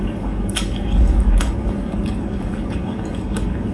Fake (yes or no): yes